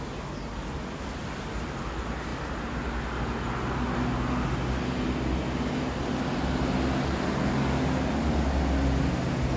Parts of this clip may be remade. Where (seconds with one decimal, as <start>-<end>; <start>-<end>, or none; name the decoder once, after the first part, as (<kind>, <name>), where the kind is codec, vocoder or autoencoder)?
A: none